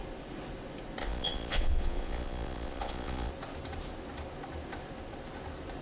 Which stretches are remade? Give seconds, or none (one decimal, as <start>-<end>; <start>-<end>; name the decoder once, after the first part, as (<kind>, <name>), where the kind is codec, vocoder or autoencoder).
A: 1.0-3.3 (vocoder, Vocos)